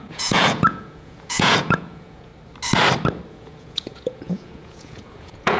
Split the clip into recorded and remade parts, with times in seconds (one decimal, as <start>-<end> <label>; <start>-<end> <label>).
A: 0.0-2.3 remade; 2.3-3.3 recorded; 3.3-5.6 remade